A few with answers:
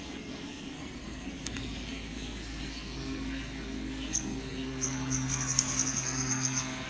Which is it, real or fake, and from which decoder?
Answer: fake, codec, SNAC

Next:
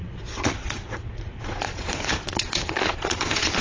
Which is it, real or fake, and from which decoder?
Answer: fake, vocoder, Vocos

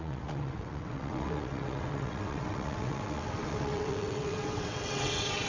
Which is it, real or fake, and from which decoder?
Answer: fake, vocoder, WaveNeXt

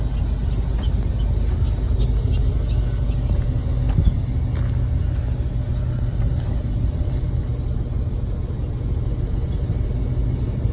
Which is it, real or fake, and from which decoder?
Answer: real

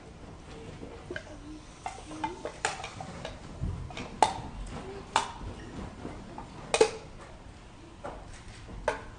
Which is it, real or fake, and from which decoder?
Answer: real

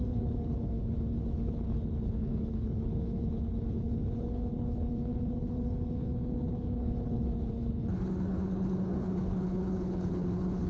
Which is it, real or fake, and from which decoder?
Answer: fake, codec, HILCodec